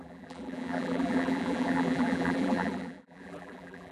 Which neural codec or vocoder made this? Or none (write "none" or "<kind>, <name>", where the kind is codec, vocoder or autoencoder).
vocoder, BigVGAN v2